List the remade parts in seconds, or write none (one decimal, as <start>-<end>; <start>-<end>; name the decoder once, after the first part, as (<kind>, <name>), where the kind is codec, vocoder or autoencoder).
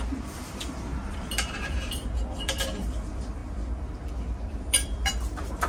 0.0-3.4 (vocoder, BigVGAN v2); 4.5-5.7